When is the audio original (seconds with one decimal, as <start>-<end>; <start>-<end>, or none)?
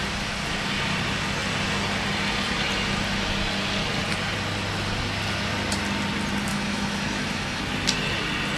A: 0.0-6.5; 7.6-8.6